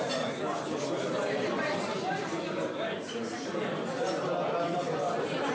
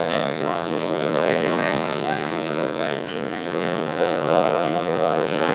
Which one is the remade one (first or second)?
second